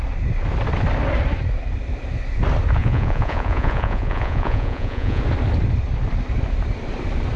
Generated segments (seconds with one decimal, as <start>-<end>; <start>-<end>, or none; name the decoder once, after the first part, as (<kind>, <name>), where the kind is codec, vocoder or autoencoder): 2.8-5.2 (vocoder, Vocos)